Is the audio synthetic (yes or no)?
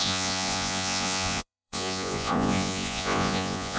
yes